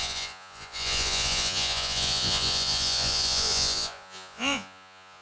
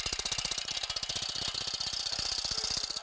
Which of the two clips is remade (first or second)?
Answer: first